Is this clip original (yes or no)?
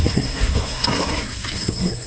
no